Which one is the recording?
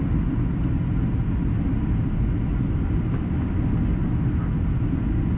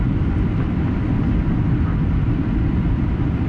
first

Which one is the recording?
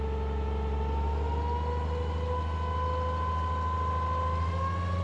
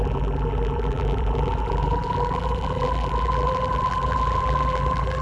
first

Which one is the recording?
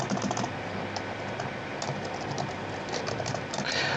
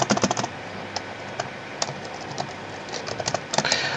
first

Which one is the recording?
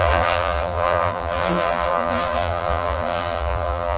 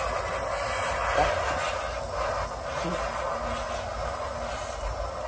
second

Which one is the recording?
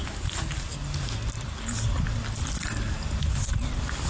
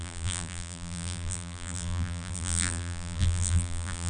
first